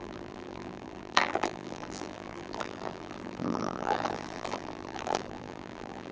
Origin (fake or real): fake